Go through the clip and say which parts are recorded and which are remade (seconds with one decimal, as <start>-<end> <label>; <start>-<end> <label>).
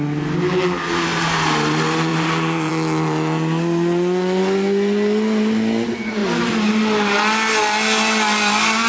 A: 0.0-2.1 recorded; 2.1-2.7 remade; 2.7-8.9 recorded